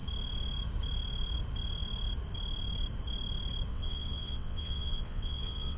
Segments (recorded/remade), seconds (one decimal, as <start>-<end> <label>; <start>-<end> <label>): 0.0-3.7 recorded; 3.7-5.8 remade